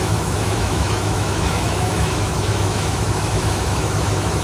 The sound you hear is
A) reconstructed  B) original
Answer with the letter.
A